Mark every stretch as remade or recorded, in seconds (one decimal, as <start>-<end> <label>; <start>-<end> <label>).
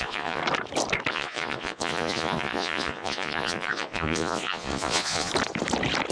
0.0-0.4 remade; 0.4-1.1 recorded; 1.1-5.3 remade; 5.3-6.1 recorded